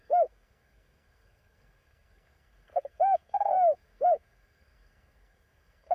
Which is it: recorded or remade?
remade